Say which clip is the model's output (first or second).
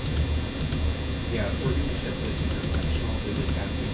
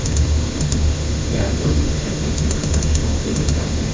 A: second